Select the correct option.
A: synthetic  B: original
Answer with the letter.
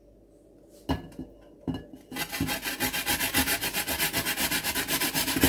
B